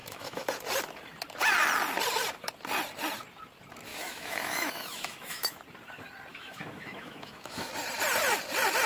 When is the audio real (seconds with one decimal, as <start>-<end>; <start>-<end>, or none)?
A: 0.5-3.9; 5.6-6.3; 7.7-8.9